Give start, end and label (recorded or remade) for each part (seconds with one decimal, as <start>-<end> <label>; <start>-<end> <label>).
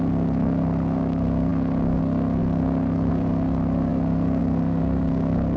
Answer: 0.0-5.6 remade